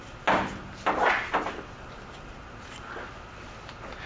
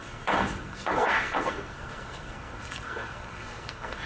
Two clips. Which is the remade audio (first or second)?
second